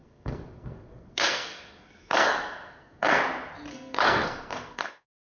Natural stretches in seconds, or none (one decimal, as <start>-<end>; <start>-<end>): 3.2-3.7